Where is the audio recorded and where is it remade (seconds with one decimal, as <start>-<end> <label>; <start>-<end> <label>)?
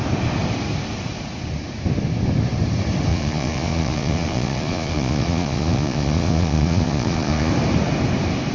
0.0-3.1 recorded; 3.1-7.5 remade; 7.5-8.5 recorded